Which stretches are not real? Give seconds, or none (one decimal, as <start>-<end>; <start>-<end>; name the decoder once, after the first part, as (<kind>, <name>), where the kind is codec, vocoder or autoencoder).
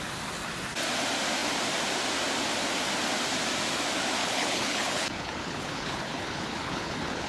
4.2-7.3 (codec, HILCodec)